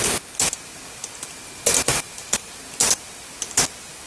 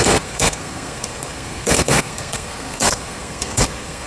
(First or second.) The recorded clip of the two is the first